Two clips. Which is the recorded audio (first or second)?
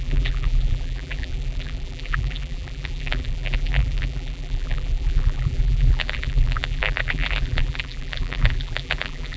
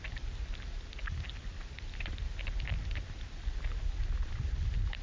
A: second